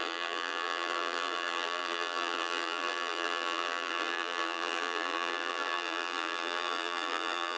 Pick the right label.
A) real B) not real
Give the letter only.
B